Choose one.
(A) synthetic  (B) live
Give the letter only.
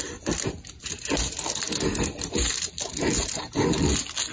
B